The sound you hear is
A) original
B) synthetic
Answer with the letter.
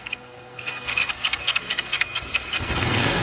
B